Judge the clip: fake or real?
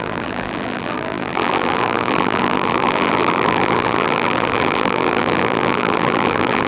fake